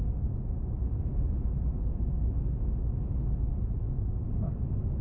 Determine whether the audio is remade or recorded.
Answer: recorded